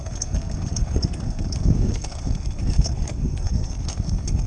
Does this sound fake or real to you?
fake